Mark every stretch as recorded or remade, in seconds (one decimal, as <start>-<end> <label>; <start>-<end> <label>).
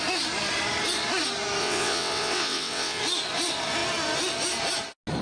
0.0-1.6 recorded; 1.6-3.0 remade; 3.0-5.2 recorded